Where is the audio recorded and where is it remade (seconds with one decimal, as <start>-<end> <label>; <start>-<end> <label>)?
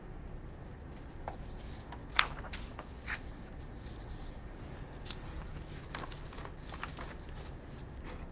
0.0-8.3 recorded